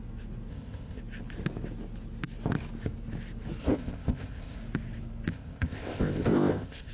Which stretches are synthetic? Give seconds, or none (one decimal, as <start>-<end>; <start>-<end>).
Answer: 0.5-1.0; 3.6-4.6; 5.3-6.9